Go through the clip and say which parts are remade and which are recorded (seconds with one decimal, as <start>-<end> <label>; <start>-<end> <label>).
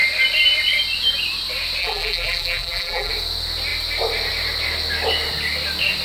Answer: 0.0-1.8 recorded; 1.8-3.1 remade; 3.1-6.0 recorded